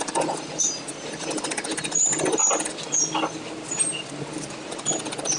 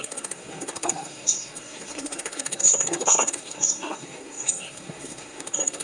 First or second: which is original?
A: first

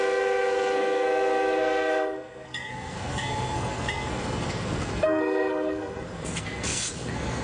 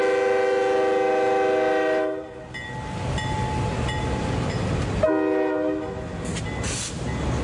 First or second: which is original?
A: second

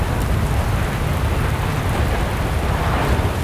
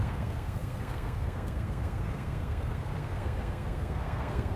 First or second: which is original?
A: first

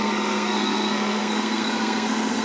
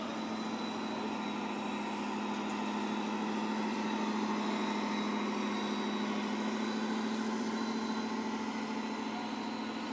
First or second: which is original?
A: second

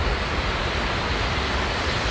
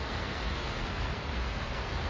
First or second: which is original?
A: first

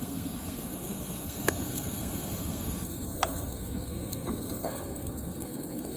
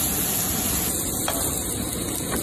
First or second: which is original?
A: second